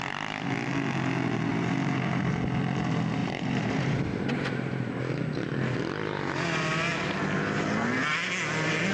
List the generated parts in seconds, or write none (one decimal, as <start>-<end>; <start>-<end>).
1.5-2.3; 3.2-5.0

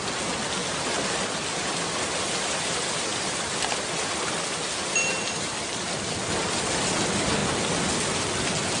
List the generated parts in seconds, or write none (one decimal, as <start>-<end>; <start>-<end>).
none

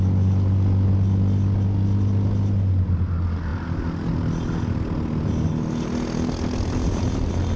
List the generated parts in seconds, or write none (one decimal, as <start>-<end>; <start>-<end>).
none